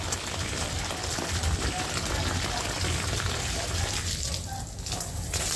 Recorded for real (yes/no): yes